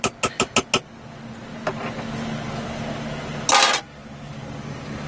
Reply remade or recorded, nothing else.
recorded